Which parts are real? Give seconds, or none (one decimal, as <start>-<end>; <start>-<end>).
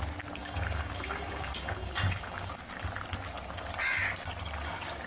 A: 0.0-0.4; 2.5-5.1